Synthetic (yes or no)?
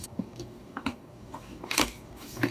yes